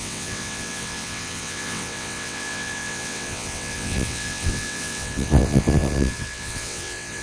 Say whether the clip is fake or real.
fake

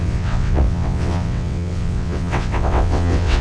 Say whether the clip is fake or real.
fake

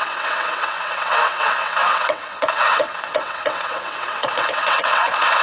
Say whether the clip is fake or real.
fake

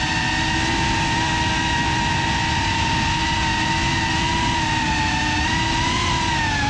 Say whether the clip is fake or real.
real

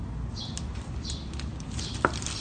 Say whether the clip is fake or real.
real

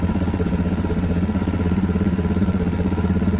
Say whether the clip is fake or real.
fake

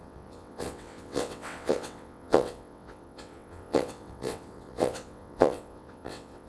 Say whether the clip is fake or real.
fake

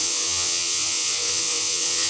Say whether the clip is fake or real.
fake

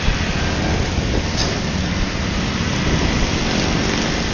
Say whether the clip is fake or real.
real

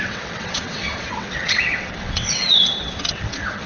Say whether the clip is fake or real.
fake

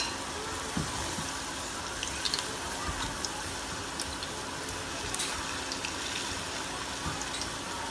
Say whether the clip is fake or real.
real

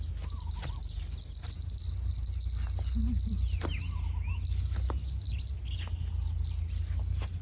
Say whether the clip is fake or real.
real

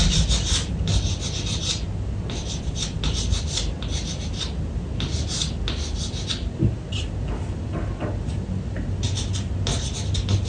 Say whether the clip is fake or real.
real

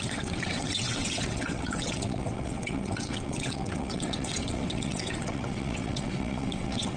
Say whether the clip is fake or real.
fake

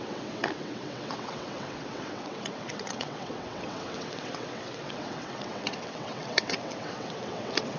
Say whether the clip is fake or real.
fake